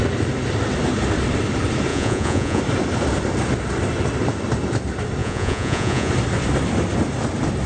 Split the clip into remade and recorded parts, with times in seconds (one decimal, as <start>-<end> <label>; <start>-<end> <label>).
0.0-1.9 recorded; 1.9-2.6 remade; 2.6-5.2 recorded; 5.2-6.1 remade; 6.1-7.7 recorded